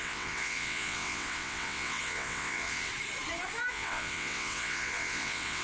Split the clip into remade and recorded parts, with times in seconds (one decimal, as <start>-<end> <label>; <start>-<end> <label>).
0.0-2.9 remade; 2.9-3.7 recorded; 3.7-5.6 remade